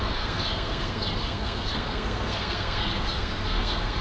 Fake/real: fake